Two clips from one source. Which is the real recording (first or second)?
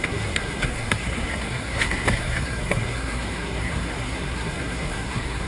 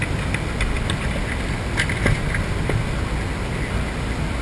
second